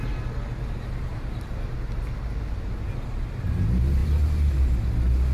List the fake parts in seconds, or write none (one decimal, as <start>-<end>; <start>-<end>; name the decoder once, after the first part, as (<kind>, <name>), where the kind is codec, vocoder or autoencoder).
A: none